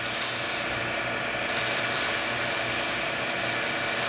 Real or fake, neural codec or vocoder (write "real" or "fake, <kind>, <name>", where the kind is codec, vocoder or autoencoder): real